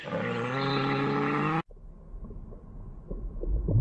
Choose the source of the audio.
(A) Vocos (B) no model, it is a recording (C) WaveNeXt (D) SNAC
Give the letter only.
B